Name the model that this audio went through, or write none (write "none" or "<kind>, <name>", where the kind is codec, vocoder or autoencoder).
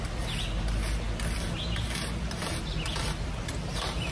none